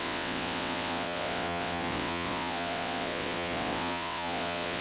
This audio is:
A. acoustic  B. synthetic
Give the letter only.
B